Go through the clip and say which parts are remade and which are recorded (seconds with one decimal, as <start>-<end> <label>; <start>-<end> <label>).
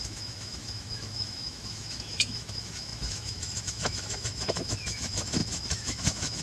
0.0-6.4 remade